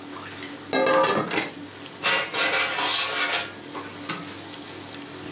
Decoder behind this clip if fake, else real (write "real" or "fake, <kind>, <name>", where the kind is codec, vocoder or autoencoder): real